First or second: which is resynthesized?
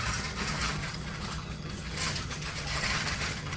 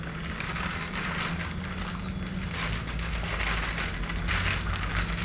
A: first